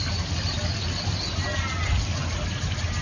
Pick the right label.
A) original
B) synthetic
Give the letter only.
A